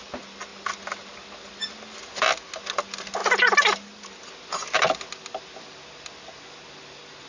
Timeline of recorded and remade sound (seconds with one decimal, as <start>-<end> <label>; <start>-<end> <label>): 0.0-7.3 recorded